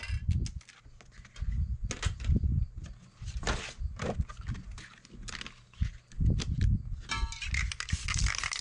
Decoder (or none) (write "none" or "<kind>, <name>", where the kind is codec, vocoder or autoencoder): none